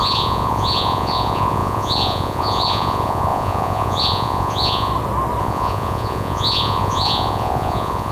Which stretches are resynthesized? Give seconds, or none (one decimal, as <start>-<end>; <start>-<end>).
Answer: 0.0-4.9; 5.4-8.1